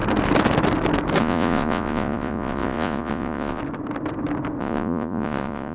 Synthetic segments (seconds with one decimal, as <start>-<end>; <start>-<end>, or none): 1.2-3.6; 4.6-5.7